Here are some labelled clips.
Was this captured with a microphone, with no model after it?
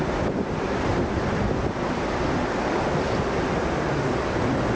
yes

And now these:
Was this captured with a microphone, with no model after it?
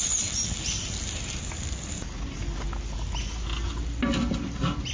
yes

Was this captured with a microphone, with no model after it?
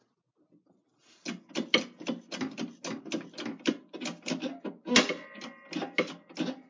yes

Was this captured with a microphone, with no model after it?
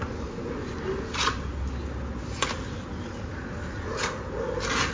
yes